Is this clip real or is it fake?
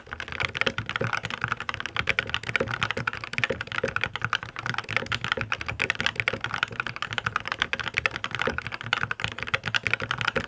real